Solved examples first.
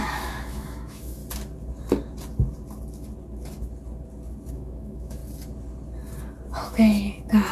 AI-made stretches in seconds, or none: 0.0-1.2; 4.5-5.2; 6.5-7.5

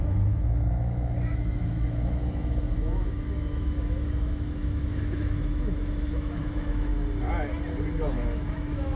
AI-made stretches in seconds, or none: 0.0-6.9; 8.1-9.0

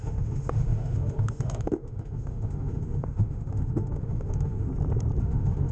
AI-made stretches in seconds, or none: 0.0-4.7; 5.2-5.7